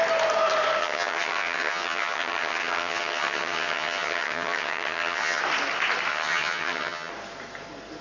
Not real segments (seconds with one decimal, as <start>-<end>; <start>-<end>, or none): 0.8-5.4; 6.1-7.1